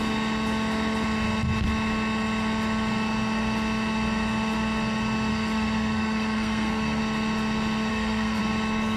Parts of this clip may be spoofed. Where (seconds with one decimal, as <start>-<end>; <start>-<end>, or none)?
5.3-7.0; 7.9-8.4